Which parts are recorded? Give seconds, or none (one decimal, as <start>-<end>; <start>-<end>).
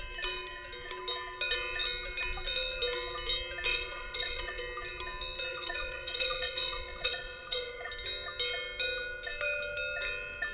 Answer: 0.0-3.7; 4.6-5.5; 7.9-10.5